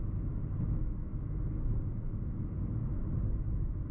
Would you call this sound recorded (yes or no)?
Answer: yes